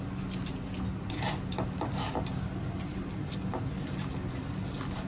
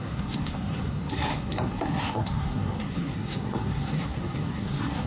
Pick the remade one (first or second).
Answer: second